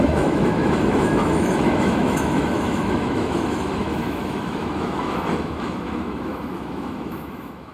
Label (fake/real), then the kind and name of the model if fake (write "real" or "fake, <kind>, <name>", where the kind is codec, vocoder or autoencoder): fake, autoencoder, DAC-VAE